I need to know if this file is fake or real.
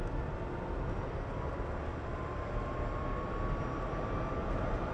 real